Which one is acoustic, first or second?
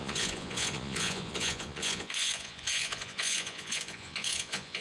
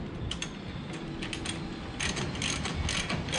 second